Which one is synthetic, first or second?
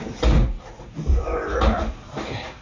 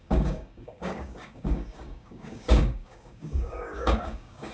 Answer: second